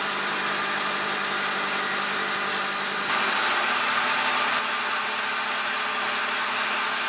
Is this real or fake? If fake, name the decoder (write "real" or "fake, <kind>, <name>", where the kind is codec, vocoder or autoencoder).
real